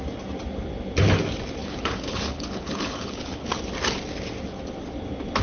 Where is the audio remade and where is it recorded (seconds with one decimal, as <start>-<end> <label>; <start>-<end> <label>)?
0.0-1.6 recorded; 1.6-3.6 remade; 3.6-5.4 recorded